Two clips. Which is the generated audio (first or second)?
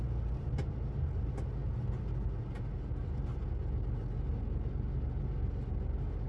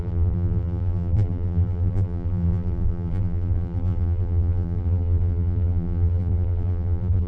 second